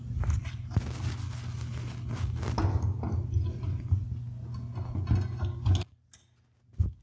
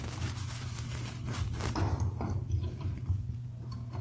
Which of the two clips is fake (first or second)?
second